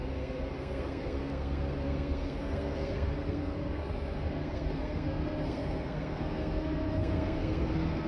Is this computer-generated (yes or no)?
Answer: yes